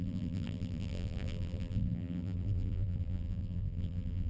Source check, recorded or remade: remade